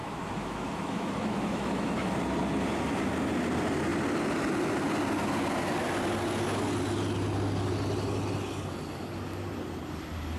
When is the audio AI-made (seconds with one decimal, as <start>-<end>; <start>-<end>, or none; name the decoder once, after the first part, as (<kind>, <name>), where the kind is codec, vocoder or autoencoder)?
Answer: 0.0-2.1 (autoencoder, DAC-VAE)